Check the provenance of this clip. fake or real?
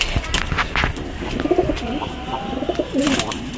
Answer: real